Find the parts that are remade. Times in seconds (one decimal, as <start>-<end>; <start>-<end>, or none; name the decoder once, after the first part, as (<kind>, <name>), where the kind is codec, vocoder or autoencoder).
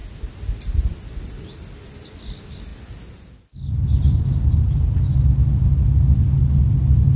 none